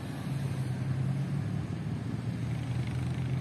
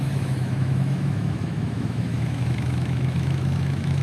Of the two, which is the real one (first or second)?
first